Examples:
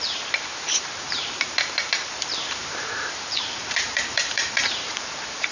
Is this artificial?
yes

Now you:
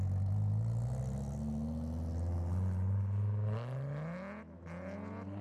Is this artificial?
no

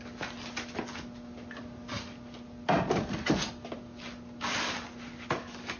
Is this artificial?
no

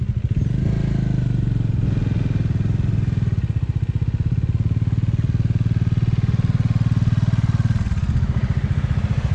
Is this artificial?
no